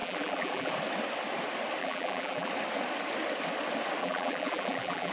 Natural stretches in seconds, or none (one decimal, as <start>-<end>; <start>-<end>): 0.7-1.8; 2.5-4.0